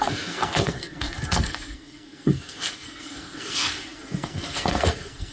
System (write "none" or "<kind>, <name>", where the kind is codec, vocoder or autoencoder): codec, SNAC